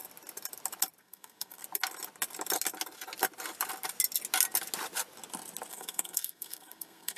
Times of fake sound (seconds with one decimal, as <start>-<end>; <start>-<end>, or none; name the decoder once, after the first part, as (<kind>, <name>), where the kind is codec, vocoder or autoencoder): 1.0-1.6 (codec, SNAC); 5.7-7.2